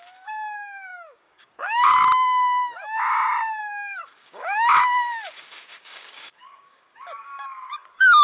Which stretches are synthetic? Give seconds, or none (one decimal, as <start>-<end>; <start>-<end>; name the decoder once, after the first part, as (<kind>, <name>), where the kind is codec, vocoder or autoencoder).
0.0-8.2 (codec, DAC)

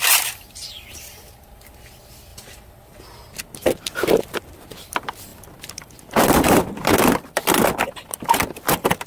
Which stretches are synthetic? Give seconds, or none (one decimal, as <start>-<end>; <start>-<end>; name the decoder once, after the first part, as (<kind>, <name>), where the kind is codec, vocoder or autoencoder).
0.0-2.3 (vocoder, BigVGAN v2); 4.2-9.1

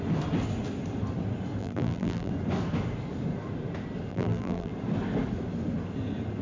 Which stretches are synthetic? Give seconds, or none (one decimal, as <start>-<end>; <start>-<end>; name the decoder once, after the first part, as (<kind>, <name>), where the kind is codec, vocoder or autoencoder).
1.6-2.3 (vocoder, BigVGAN v2); 4.1-4.7

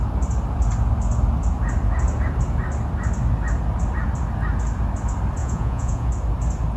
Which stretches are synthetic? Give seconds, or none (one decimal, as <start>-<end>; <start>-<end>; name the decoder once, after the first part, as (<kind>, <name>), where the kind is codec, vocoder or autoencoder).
5.4-6.1 (vocoder, Vocos)